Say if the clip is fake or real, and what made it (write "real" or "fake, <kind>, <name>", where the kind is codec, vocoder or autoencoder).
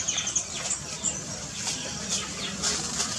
real